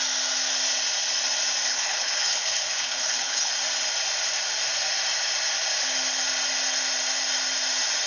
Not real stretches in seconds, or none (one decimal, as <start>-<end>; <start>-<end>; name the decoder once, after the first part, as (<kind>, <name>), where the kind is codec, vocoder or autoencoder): 1.7-3.5 (codec, HILCodec)

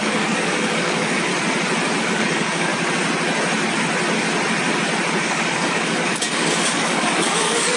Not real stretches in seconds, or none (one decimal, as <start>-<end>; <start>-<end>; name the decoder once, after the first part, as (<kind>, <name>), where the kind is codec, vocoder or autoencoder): 0.0-1.3 (codec, DAC); 2.0-2.7; 5.2-7.8